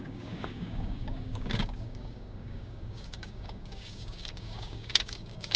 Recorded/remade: remade